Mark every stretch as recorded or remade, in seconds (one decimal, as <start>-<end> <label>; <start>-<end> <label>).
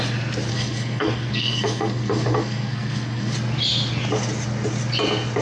0.0-0.5 recorded; 0.5-3.3 remade; 3.3-5.4 recorded